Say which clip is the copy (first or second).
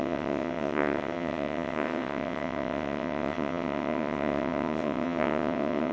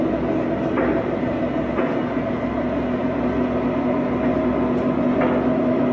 first